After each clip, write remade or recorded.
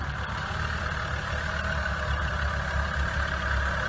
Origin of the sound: recorded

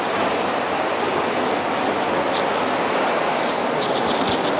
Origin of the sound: recorded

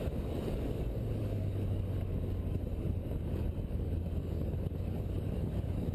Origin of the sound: remade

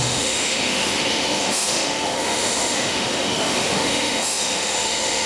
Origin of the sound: remade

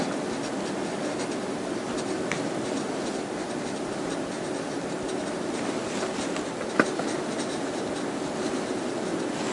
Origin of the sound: recorded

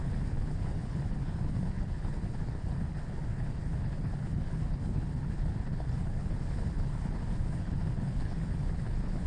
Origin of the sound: remade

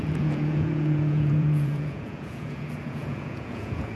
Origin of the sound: remade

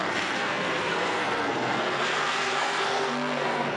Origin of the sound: remade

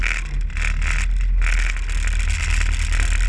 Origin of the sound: recorded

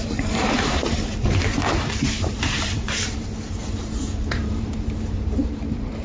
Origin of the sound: remade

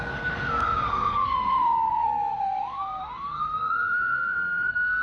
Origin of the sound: remade